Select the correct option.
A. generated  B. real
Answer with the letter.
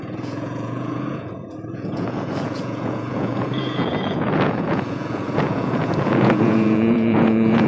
A